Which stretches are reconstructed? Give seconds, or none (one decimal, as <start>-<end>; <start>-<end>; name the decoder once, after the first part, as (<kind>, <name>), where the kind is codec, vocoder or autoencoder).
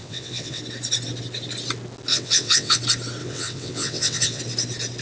0.0-0.6 (vocoder, WaveNeXt); 2.1-2.8; 3.2-4.4